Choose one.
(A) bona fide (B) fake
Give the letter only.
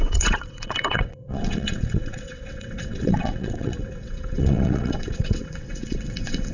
B